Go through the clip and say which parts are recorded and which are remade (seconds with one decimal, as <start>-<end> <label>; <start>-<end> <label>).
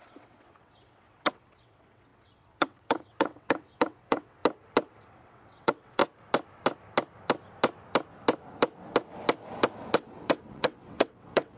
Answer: 0.0-4.4 remade; 4.4-5.0 recorded; 5.0-6.0 remade; 6.0-9.9 recorded; 9.9-11.6 remade